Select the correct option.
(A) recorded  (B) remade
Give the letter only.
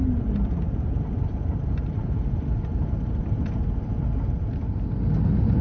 A